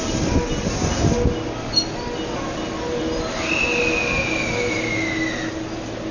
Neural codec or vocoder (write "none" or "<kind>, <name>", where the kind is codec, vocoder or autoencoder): none